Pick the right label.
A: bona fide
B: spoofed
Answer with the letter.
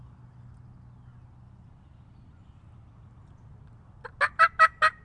A